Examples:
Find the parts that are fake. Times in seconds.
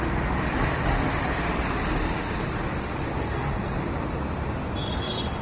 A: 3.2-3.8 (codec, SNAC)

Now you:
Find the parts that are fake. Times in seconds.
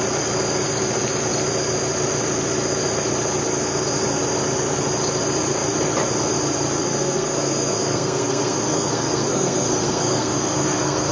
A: 6.8-11.1 (codec, SNAC)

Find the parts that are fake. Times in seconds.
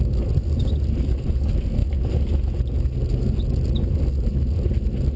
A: none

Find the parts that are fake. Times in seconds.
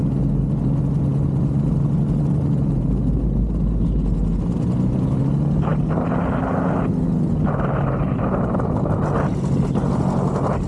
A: none